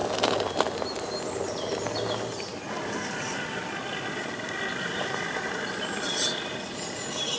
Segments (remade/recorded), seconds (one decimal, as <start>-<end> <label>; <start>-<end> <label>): 0.0-2.5 recorded; 2.5-3.5 remade; 3.5-4.7 recorded; 4.7-5.6 remade; 5.6-7.4 recorded